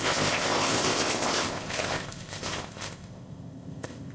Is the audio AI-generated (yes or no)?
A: yes